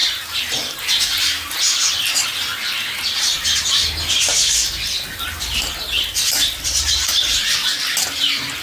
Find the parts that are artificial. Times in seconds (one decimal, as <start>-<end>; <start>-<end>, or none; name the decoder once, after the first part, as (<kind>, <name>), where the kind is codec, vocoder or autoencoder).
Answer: 5.2-8.6 (vocoder, BigVGAN v2)